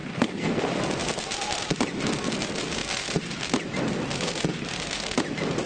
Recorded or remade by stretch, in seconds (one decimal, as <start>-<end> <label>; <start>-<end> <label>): 0.0-0.6 remade; 0.6-5.7 recorded

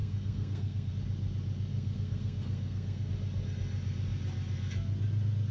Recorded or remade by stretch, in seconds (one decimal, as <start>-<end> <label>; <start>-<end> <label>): 0.0-0.9 remade; 0.9-1.7 recorded; 1.7-3.1 remade; 3.1-5.5 recorded